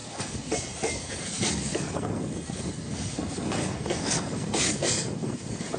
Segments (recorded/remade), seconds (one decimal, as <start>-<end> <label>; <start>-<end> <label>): 0.0-5.8 remade